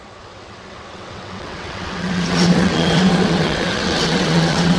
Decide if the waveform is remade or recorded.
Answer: remade